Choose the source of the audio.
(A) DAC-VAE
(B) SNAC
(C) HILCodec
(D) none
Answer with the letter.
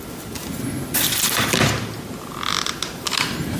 D